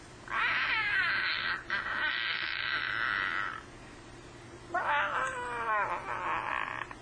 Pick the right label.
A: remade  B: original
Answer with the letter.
B